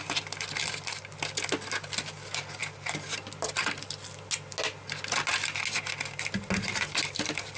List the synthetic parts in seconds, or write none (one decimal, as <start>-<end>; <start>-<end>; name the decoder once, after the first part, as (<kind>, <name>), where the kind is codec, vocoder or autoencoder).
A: none